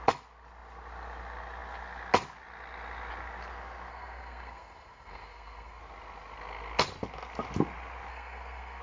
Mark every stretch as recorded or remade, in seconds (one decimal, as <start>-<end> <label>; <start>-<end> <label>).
0.0-3.9 recorded; 3.9-5.8 remade; 5.8-8.1 recorded; 8.1-8.8 remade